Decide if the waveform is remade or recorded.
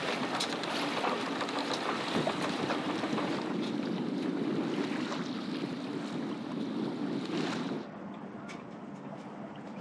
recorded